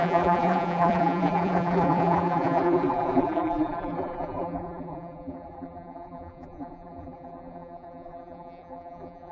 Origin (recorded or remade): remade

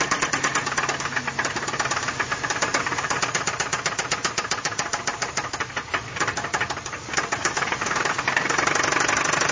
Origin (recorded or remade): remade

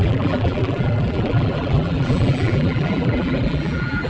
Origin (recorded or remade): remade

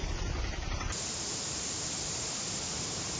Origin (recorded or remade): remade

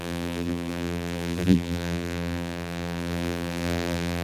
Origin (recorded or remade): remade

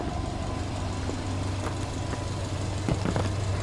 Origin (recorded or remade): recorded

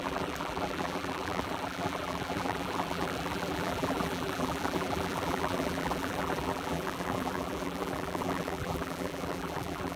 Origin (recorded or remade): remade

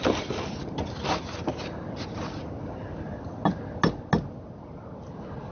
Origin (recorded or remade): recorded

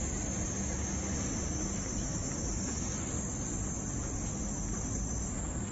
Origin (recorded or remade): recorded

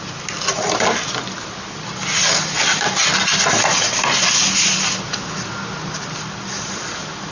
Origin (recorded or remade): recorded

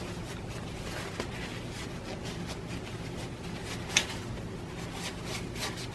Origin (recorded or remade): recorded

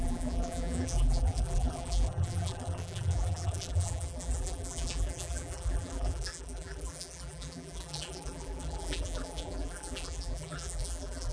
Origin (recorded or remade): remade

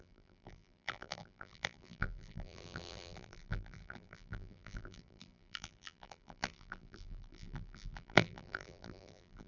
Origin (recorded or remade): remade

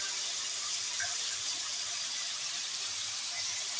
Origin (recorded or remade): remade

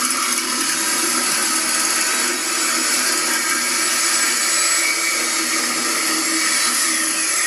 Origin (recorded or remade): recorded